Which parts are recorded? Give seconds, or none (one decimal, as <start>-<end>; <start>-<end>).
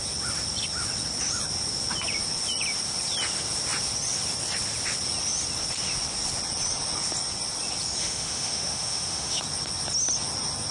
0.0-8.0; 9.4-10.7